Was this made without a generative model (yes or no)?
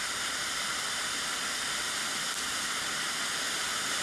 yes